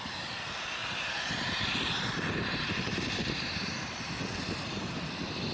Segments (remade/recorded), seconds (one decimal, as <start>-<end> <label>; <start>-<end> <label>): 0.0-0.8 recorded; 0.8-4.1 remade; 4.1-5.5 recorded